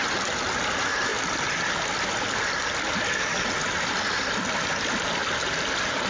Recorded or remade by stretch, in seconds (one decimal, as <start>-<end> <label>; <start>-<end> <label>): 0.0-6.1 recorded